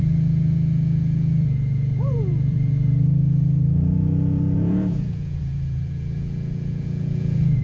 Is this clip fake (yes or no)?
yes